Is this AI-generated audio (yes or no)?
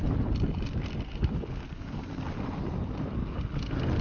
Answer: no